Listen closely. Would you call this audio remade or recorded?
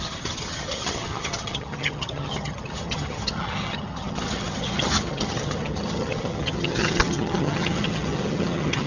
remade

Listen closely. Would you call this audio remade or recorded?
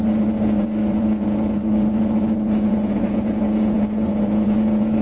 remade